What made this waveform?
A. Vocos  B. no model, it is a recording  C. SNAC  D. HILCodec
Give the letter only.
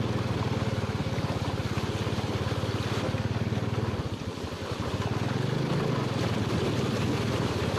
B